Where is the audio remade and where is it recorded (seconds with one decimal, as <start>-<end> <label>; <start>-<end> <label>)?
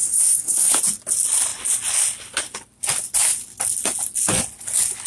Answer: 0.0-0.7 remade; 0.7-5.1 recorded